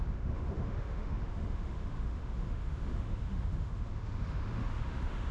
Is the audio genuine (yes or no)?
no